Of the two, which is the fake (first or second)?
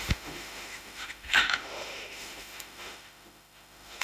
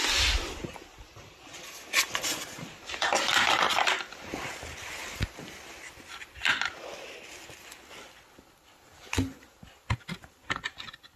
first